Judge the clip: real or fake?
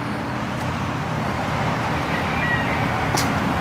real